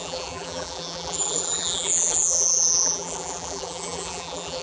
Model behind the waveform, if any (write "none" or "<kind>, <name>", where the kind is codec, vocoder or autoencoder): vocoder, BigVGAN v2